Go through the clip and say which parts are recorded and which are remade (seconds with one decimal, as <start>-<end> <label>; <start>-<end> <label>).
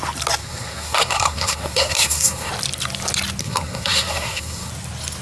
0.0-0.4 recorded; 0.4-2.5 remade; 2.5-3.4 recorded; 3.4-4.7 remade; 4.7-5.2 recorded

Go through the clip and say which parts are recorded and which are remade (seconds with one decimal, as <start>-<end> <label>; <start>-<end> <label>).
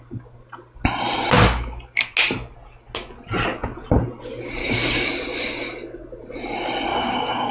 0.0-4.6 recorded; 4.6-5.1 remade; 5.1-6.9 recorded; 6.9-7.5 remade